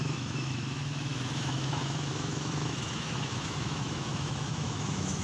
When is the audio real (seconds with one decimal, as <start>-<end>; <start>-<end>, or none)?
none